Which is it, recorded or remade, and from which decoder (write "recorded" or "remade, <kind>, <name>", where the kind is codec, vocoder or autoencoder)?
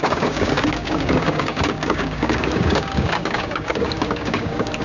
remade, codec, DAC